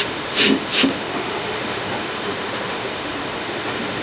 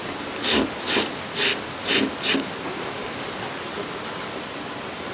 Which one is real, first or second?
second